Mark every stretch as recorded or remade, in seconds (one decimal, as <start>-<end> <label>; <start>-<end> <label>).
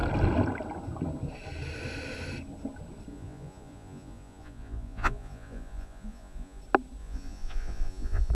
0.0-3.1 recorded; 3.1-6.6 remade; 6.6-7.0 recorded; 7.0-8.3 remade